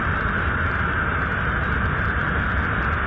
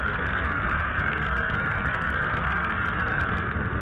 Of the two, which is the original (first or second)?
first